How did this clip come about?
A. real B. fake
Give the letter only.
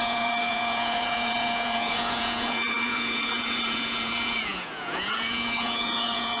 B